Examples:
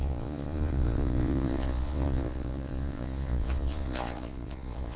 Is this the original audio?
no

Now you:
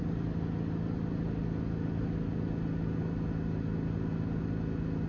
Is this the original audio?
yes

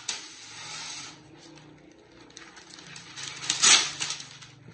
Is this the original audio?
yes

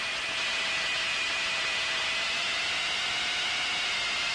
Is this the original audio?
yes